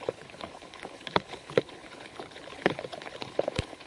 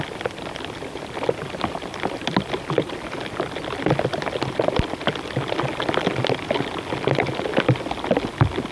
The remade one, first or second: first